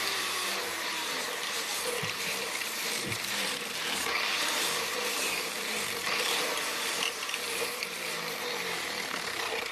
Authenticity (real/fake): fake